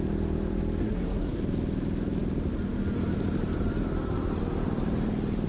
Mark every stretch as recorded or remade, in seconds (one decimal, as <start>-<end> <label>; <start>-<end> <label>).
0.0-0.8 recorded; 0.8-1.4 remade; 1.4-5.5 recorded